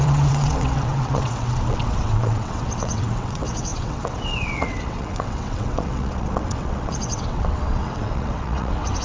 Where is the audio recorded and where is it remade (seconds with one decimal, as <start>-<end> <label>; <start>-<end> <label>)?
0.0-9.0 remade